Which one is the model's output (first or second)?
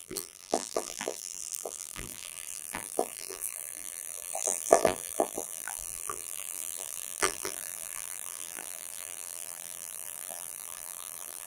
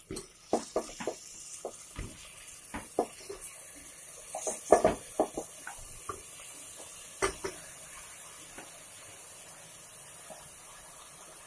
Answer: first